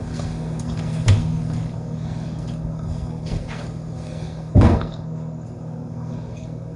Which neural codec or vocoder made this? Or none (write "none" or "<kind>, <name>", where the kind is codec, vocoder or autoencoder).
codec, SNAC